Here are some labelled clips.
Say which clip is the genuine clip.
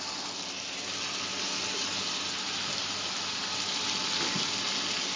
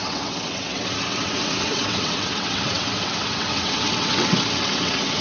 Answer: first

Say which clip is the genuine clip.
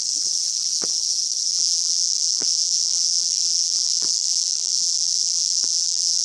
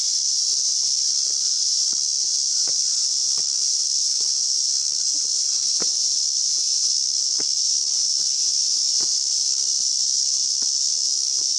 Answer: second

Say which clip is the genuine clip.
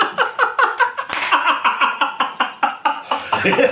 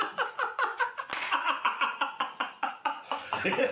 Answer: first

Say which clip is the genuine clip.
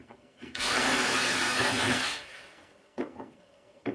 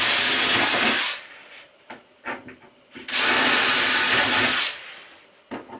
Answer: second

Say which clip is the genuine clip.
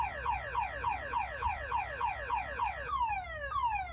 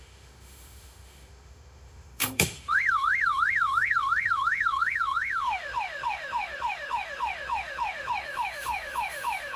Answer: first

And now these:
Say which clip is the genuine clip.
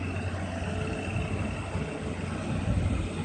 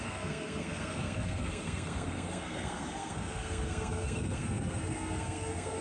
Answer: first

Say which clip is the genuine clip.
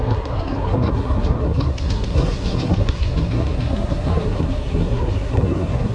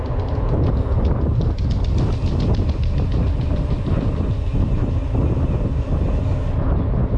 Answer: second